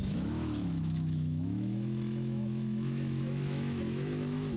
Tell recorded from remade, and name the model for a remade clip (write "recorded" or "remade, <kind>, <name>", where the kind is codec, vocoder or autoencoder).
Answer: remade, autoencoder, DAC-VAE